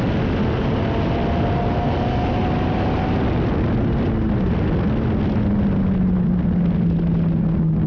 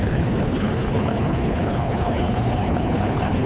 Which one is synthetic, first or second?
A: second